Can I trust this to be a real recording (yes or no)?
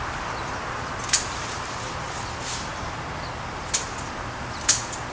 yes